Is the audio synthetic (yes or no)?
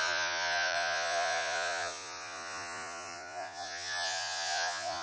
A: yes